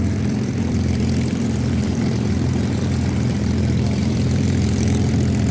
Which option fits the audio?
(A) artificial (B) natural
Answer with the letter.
A